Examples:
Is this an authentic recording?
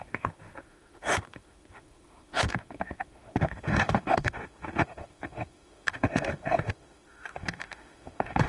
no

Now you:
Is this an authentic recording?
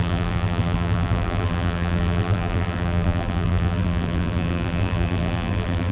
no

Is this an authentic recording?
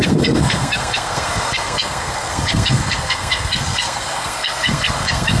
no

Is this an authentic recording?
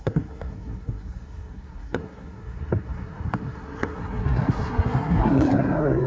no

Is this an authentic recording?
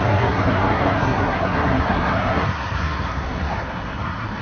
no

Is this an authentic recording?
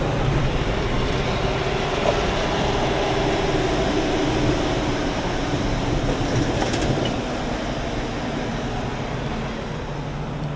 yes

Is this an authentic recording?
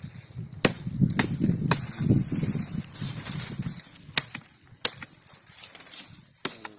yes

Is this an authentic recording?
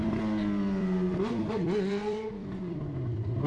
no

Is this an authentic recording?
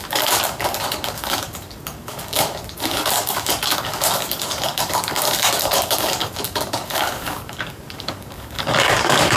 no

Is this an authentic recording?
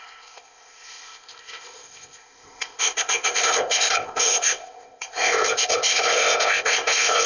no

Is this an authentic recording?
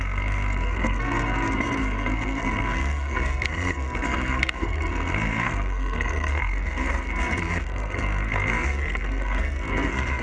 no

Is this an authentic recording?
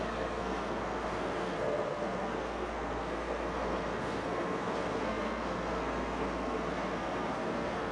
no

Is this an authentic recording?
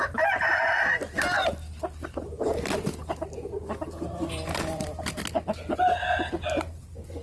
yes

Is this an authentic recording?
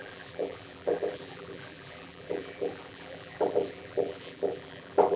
no